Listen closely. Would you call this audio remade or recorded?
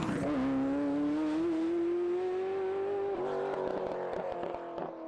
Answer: recorded